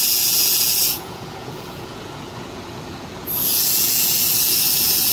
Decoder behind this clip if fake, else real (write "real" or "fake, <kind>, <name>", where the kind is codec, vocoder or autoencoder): fake, vocoder, Vocos